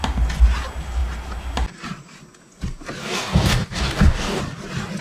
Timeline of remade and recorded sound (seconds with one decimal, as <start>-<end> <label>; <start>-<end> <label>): 0.0-3.0 recorded; 3.0-4.4 remade; 4.4-5.0 recorded